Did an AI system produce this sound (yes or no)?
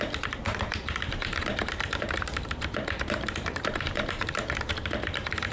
yes